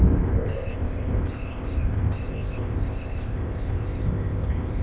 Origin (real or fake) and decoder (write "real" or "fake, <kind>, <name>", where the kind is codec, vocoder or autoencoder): fake, codec, ZipCodec